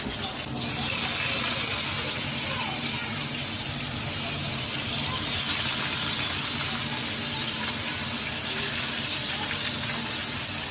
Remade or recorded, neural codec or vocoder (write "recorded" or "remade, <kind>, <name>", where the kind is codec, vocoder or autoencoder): recorded